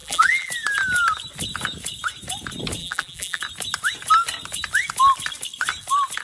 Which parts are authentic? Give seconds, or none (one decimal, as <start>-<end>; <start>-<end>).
0.5-2.8; 3.4-6.2